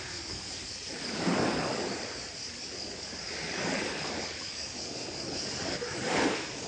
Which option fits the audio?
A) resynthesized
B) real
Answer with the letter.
A